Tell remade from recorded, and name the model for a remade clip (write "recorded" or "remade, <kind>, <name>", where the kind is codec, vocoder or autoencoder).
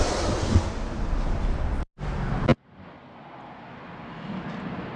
recorded